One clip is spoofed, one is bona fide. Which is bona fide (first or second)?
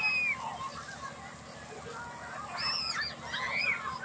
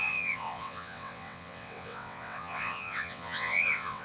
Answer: first